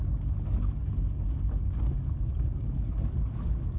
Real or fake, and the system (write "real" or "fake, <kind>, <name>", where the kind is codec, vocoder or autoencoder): fake, codec, DAC